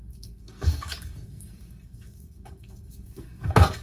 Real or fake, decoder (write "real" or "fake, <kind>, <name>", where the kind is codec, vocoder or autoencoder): fake, codec, SNAC